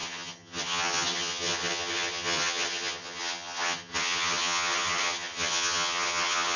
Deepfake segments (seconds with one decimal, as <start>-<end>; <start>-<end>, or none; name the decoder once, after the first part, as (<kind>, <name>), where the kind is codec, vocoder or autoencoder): 0.0-6.6 (vocoder, HiFi-GAN)